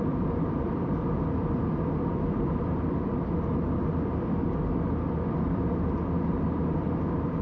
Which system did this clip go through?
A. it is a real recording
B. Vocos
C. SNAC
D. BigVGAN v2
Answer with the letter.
D